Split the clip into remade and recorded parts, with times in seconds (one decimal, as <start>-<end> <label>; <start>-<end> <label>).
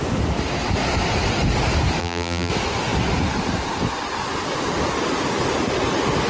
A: 0.0-2.0 recorded; 2.0-2.5 remade; 2.5-6.3 recorded